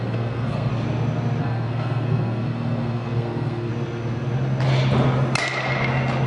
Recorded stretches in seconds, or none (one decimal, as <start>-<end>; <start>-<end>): 0.7-1.4; 3.7-6.3

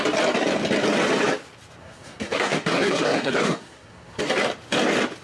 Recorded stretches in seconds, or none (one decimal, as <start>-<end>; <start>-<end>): 0.0-1.8; 4.2-5.2

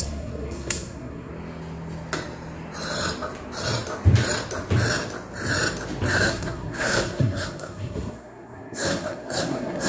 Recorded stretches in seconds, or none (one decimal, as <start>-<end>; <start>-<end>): 1.3-6.1

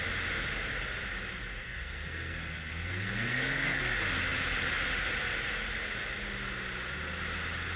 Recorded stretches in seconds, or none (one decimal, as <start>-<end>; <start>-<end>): 0.0-1.6; 3.8-7.8

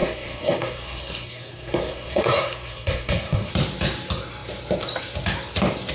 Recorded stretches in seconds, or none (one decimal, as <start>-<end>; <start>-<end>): 3.5-5.9